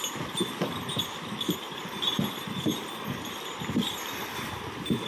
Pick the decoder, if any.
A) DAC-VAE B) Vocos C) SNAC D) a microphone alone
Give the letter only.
D